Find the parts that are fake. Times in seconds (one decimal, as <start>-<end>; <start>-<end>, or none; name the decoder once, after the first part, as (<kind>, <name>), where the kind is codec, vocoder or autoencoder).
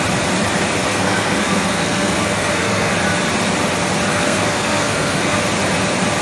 0.9-2.9 (codec, SNAC); 4.1-5.4